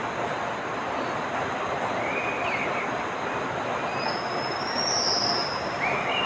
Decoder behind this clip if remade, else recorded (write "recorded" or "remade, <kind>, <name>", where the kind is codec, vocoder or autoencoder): recorded